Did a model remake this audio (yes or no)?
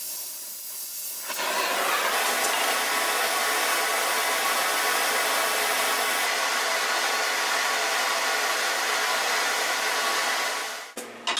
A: no